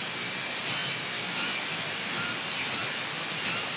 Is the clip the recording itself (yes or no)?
yes